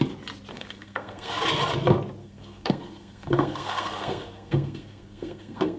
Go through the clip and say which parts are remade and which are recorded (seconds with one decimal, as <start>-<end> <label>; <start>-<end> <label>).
0.0-0.5 recorded; 0.5-1.3 remade; 1.3-2.2 recorded; 2.2-5.8 remade